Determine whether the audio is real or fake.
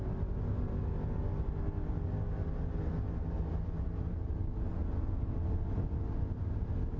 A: real